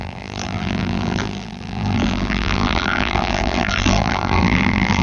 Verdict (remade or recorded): remade